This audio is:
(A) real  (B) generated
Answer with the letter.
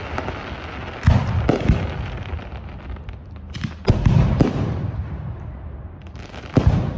A